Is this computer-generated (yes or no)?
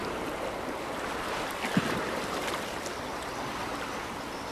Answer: yes